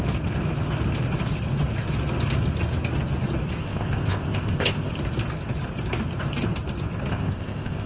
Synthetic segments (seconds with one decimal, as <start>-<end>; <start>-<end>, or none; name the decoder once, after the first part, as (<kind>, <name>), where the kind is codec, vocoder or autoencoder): 3.6-4.9 (codec, ZipCodec); 7.1-7.9